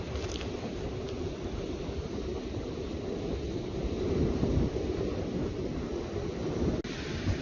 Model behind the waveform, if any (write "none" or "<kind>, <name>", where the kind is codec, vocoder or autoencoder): none